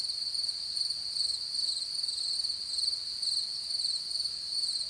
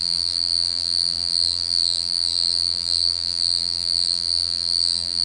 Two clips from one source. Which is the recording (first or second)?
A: first